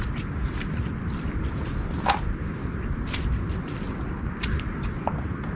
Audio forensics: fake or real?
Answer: real